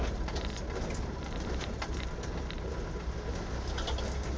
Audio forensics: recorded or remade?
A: recorded